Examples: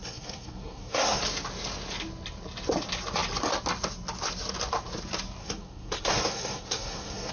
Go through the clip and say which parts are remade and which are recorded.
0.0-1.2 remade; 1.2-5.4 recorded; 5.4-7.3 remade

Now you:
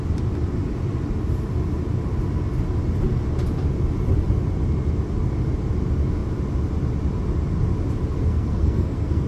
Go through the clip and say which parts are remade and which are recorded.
0.0-8.2 recorded; 8.2-9.3 remade